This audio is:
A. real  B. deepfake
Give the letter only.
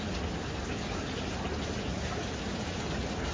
A